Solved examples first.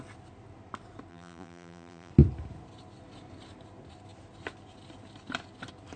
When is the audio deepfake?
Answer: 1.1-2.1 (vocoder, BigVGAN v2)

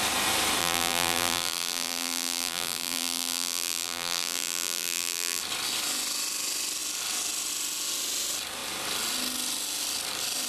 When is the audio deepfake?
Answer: 0.6-5.4 (vocoder, BigVGAN v2)

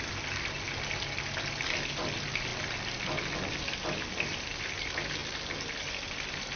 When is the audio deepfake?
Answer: none